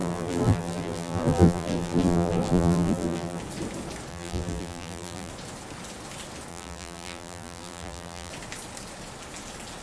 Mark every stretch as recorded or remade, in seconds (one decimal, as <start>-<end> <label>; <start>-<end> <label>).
0.0-3.4 remade; 3.4-4.1 recorded; 4.1-5.3 remade; 5.3-6.5 recorded; 6.5-8.3 remade; 8.3-9.8 recorded